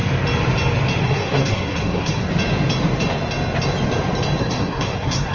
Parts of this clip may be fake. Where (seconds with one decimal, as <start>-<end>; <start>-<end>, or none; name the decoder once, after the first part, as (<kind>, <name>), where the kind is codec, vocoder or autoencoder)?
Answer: 1.0-2.3 (codec, SNAC); 4.4-5.3